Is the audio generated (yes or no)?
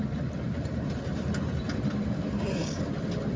no